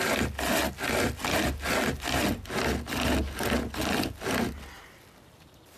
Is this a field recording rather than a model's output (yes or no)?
yes